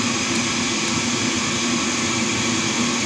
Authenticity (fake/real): real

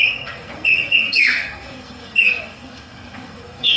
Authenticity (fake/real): fake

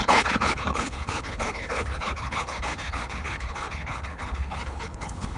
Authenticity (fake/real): fake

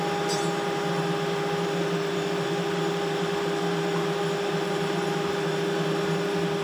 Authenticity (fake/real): real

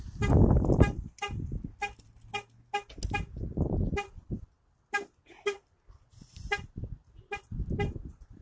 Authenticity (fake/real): real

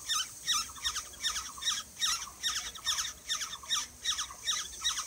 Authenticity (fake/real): real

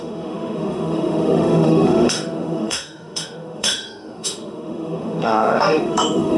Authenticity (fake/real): fake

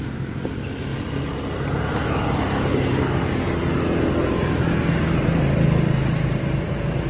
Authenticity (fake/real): real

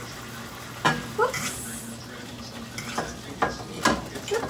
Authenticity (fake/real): real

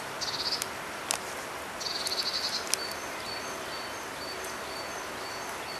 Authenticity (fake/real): real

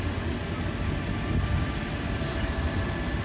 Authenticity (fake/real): real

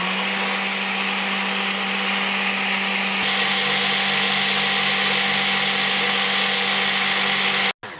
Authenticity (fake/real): real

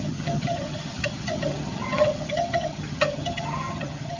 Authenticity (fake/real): fake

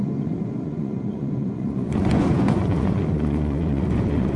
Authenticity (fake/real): fake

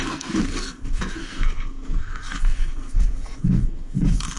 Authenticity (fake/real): fake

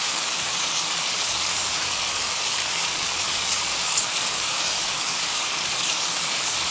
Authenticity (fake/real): fake